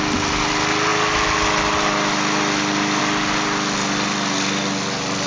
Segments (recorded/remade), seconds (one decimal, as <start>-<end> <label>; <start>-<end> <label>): 0.0-5.3 recorded